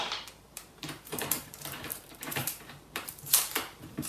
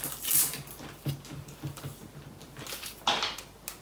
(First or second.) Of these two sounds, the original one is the second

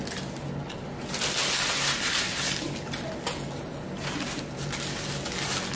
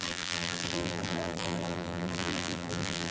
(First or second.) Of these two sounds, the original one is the first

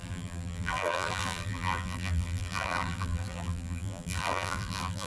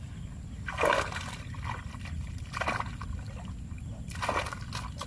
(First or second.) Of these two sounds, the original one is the second